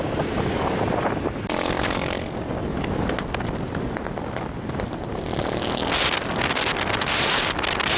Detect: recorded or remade recorded